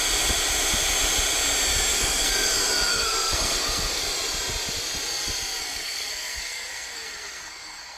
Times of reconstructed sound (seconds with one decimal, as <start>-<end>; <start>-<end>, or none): 1.9-2.5; 2.9-4.0; 5.6-8.0